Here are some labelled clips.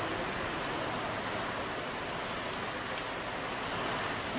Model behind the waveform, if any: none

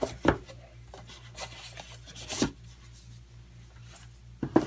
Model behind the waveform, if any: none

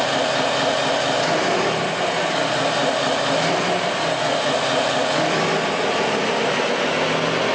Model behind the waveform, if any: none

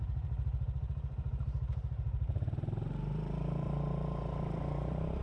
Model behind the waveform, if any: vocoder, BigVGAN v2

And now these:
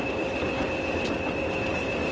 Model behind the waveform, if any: none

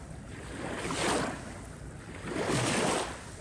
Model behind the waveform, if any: none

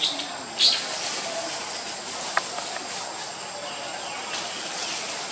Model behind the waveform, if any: none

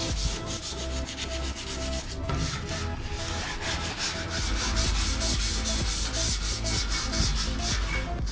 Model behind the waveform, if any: none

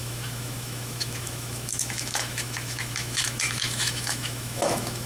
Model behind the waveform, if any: autoencoder, DAC-VAE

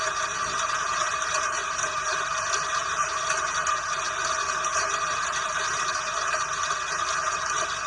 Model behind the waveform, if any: none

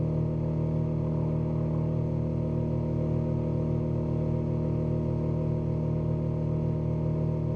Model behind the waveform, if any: none